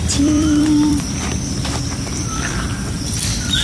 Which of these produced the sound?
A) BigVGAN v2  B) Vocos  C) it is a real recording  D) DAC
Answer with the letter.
A